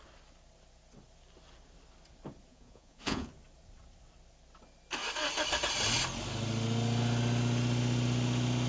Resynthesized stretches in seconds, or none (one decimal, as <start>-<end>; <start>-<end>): 2.5-3.3